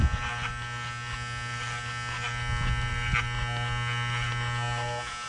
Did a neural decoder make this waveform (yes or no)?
no